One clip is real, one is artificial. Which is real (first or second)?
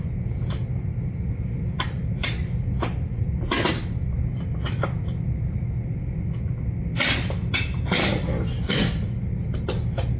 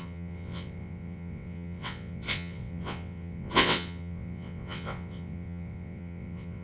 first